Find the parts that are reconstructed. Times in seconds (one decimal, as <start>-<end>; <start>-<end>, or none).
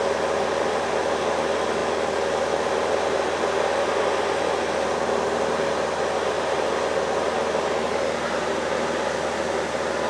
none